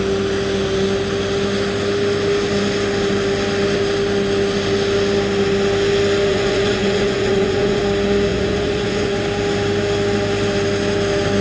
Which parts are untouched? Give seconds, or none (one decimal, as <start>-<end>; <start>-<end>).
0.0-6.3; 7.8-8.3; 9.2-11.4